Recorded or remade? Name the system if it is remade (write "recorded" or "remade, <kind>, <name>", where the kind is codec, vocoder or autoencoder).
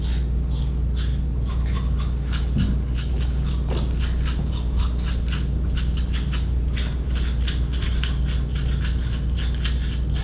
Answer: recorded